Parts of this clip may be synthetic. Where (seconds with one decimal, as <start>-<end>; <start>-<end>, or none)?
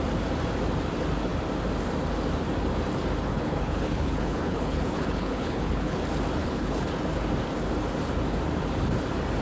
3.3-6.0; 6.4-6.9